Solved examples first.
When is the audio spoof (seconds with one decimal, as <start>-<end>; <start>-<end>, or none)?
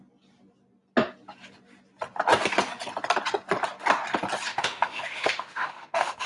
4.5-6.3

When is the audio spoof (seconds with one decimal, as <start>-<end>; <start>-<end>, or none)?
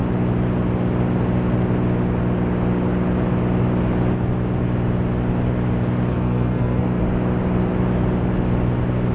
6.1-7.0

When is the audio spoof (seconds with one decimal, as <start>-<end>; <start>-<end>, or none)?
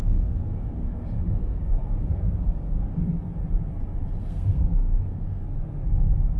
0.0-2.9; 4.2-6.4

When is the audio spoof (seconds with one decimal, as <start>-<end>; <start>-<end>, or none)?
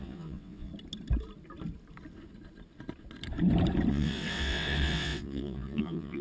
0.0-0.7; 3.9-6.2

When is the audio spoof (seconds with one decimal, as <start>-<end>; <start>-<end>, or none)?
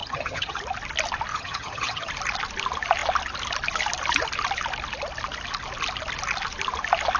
0.0-0.6; 1.3-2.1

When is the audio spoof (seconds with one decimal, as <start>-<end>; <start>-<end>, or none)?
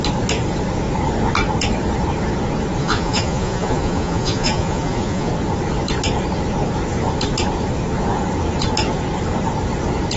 2.8-5.3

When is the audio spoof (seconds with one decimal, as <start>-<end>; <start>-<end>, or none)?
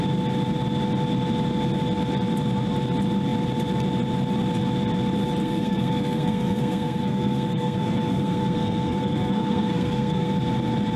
5.4-10.3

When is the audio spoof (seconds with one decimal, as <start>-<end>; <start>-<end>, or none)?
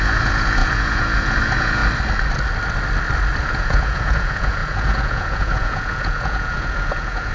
0.0-1.8; 3.4-7.3